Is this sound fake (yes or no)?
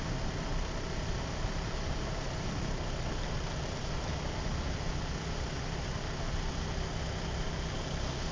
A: no